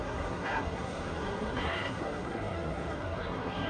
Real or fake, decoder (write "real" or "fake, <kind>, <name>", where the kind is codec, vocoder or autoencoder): fake, codec, SNAC